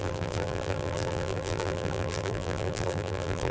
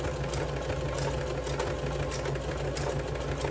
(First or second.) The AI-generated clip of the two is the first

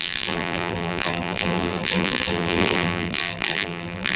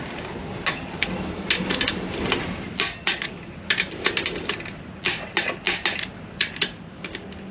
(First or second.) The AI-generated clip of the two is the first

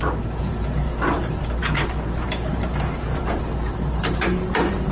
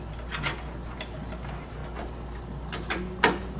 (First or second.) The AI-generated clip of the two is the first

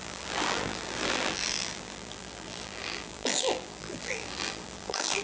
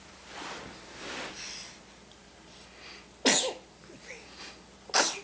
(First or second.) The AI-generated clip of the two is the first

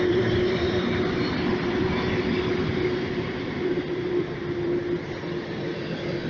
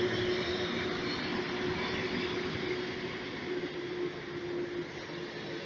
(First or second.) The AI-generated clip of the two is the first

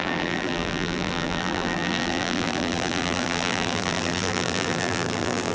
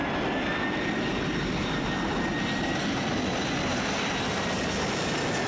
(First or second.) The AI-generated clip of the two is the first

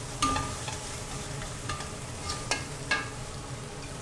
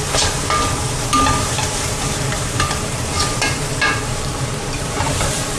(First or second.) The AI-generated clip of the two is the second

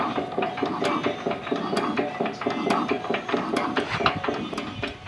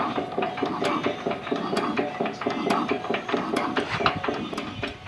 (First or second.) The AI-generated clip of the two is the second